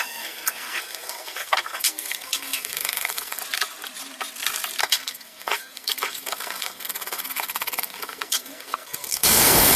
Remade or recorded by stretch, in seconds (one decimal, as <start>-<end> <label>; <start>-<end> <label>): 0.0-3.4 remade; 3.4-4.8 recorded; 4.8-9.8 remade